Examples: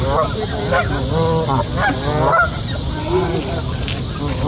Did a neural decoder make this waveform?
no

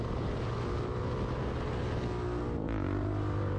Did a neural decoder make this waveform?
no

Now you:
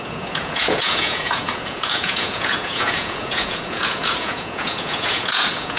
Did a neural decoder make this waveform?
yes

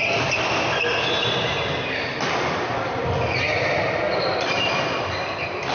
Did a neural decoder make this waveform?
no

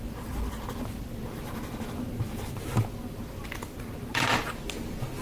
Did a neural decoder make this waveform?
no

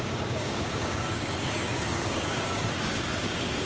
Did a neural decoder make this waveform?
yes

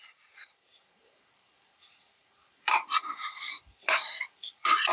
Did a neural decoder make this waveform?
yes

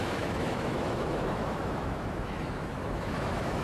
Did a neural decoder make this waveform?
yes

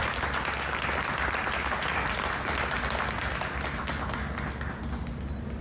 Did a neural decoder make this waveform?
no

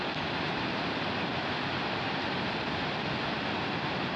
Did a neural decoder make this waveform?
no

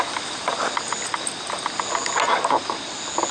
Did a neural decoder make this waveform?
no